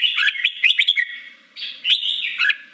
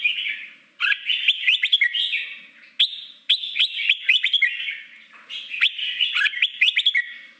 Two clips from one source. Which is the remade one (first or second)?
first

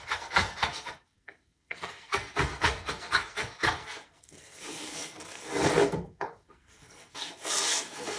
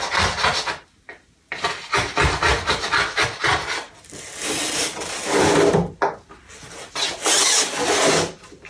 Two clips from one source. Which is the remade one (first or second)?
first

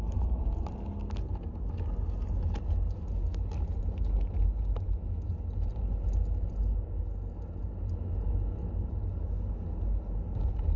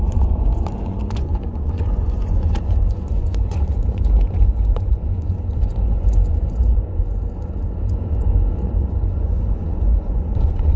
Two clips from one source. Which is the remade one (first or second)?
second